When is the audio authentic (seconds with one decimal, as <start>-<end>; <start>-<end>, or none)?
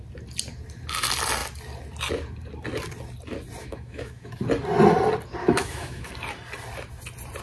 0.0-3.6; 4.3-5.4; 6.1-7.4